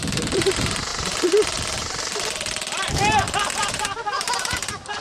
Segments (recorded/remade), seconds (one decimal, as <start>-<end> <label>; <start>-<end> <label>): 0.0-0.9 remade; 0.9-3.5 recorded; 3.5-5.0 remade